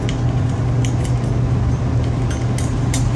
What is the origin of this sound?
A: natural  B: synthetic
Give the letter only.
A